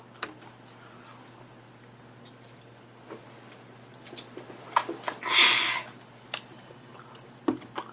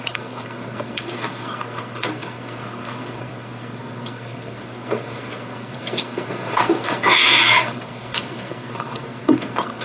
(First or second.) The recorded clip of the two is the first